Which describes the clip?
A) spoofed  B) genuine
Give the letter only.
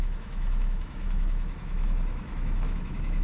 A